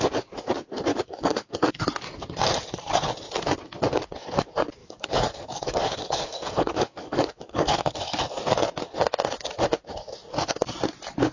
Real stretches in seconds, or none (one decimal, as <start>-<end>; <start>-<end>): 0.0-0.9; 1.8-4.8; 8.2-11.3